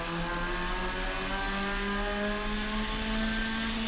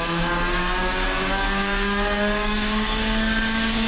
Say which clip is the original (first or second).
first